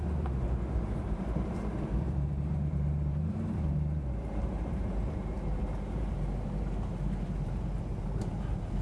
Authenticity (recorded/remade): remade